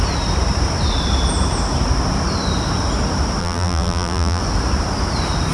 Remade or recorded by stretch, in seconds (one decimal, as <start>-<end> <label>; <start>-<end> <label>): 0.0-3.4 recorded; 3.4-4.4 remade; 4.4-5.5 recorded